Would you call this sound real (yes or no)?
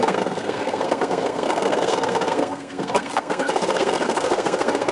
no